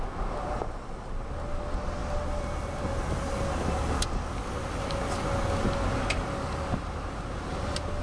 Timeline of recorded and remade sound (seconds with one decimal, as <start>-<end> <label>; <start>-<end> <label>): 0.0-8.0 recorded